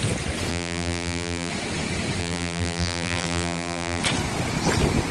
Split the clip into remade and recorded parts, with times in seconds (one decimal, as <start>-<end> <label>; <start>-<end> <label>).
0.0-0.5 recorded; 0.5-1.5 remade; 1.5-2.2 recorded; 2.2-4.0 remade; 4.0-5.1 recorded